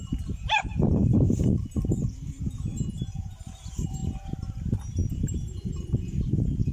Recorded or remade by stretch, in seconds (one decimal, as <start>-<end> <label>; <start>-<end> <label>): 0.0-2.7 remade; 2.7-3.3 recorded; 3.3-6.7 remade